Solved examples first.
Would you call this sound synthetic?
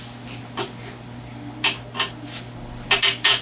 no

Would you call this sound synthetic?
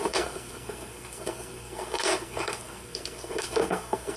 yes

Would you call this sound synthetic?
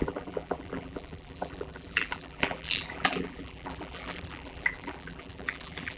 yes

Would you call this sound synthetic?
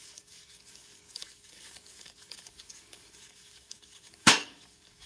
yes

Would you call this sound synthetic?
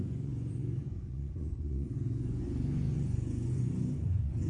yes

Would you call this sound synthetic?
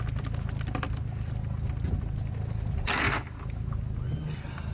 no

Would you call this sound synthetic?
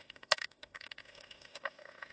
yes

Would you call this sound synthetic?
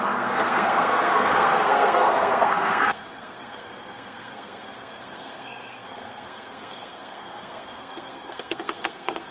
yes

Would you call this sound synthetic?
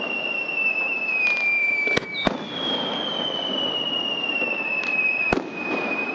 no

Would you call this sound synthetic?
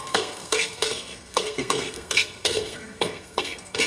yes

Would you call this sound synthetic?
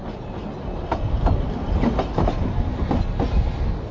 no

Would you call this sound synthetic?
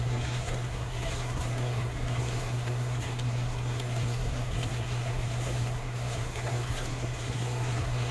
yes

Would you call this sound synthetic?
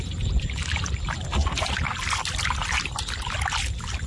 no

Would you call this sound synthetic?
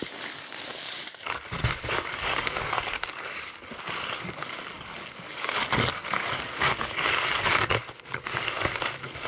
yes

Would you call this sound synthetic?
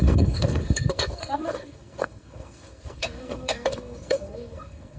yes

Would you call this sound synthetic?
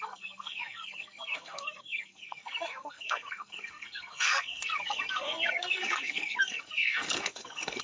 yes